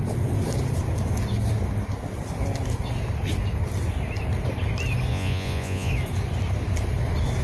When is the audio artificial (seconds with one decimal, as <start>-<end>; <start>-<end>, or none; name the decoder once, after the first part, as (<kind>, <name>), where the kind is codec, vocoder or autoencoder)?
5.1-5.9 (vocoder, Vocos)